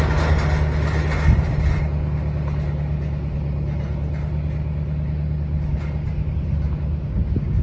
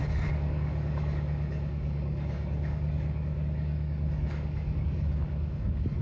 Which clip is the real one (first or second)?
first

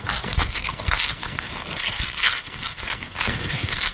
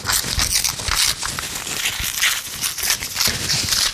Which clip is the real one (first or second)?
second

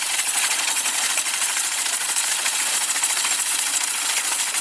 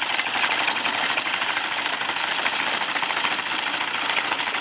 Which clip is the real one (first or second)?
second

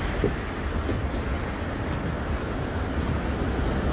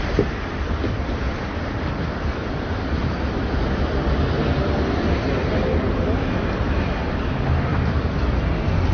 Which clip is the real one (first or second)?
first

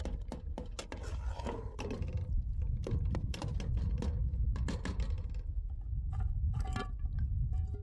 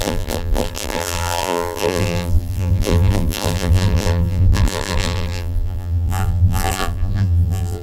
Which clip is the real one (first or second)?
first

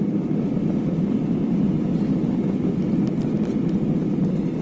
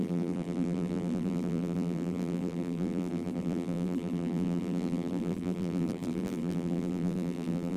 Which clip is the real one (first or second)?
first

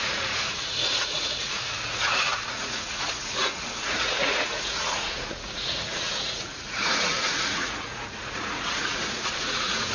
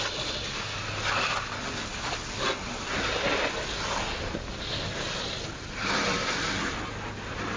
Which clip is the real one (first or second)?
second